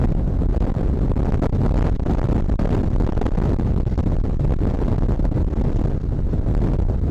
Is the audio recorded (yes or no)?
yes